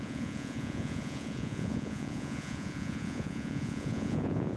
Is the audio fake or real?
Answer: fake